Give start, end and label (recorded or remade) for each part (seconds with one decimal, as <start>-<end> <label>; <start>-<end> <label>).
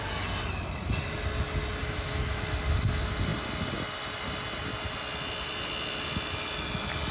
0.0-1.8 recorded; 1.8-2.4 remade; 2.4-7.1 recorded